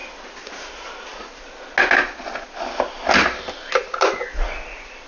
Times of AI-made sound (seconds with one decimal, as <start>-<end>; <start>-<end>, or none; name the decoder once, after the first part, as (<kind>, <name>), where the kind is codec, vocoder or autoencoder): none